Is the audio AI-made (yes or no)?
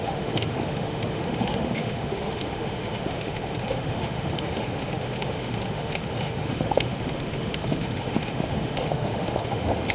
yes